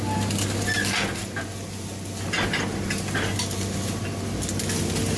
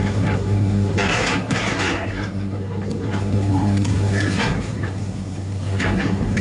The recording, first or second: first